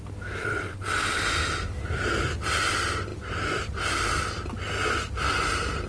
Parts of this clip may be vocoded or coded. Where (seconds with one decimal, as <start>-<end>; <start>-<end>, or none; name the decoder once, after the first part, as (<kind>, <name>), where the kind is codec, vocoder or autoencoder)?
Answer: 0.4-1.2 (vocoder, WaveNeXt)